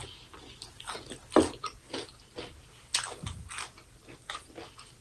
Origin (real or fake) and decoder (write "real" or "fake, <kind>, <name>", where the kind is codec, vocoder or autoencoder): real